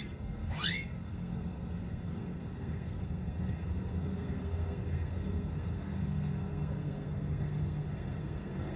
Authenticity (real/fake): fake